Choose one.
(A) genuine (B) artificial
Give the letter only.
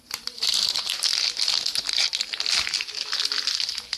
A